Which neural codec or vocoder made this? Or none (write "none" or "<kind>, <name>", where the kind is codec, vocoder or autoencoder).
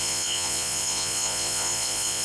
vocoder, Vocos